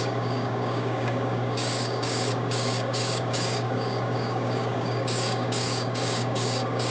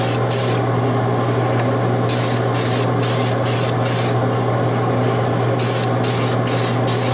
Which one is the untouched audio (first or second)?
second